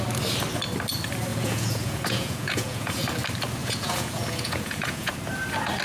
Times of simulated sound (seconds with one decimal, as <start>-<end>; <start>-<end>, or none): 1.3-3.0; 3.6-5.1